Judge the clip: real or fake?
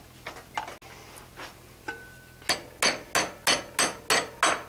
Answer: real